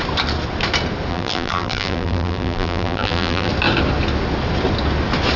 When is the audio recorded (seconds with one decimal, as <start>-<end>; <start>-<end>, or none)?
0.0-1.1; 3.5-5.4